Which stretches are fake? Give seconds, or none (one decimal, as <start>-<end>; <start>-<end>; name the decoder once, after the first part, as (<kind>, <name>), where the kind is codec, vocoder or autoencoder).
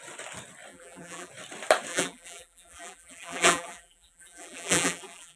0.7-1.3 (vocoder, BigVGAN v2); 1.9-5.4